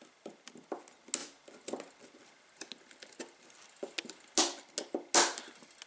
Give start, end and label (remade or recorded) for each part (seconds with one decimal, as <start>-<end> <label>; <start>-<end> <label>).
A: 0.0-5.9 recorded